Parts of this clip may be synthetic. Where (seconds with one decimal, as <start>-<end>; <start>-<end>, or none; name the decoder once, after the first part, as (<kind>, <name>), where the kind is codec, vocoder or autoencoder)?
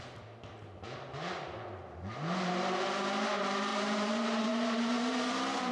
3.7-5.3 (vocoder, BigVGAN v2)